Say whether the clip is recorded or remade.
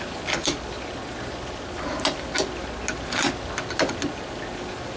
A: recorded